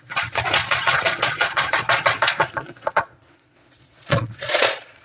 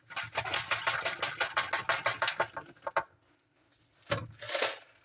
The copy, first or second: first